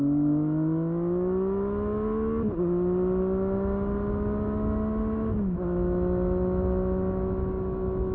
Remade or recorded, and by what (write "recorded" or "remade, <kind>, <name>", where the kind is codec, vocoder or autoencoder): recorded